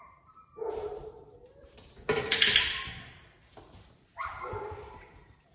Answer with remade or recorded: remade